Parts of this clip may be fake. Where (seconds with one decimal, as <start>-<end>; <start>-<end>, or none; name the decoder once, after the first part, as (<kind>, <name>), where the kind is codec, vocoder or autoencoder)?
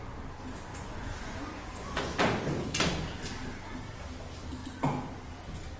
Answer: 0.7-2.0 (vocoder, Vocos)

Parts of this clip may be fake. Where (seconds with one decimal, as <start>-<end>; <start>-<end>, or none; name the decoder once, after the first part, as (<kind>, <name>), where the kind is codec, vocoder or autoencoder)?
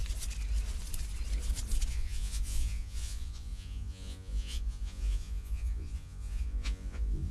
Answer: 1.9-7.3 (vocoder, Vocos)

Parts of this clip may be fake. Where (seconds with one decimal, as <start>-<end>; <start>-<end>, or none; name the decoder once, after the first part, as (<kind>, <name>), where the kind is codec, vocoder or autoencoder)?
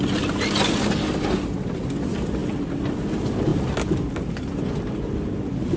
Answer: none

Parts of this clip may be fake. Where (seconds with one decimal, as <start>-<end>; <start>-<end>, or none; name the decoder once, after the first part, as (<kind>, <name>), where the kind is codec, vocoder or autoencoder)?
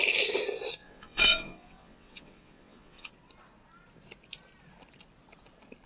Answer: 0.8-3.1 (vocoder, WaveNeXt)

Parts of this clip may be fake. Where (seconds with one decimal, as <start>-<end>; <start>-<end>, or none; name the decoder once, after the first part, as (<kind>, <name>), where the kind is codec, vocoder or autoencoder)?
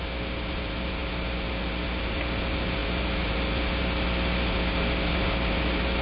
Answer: none